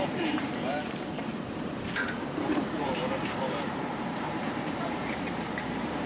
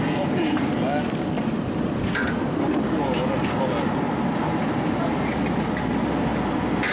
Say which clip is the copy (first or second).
first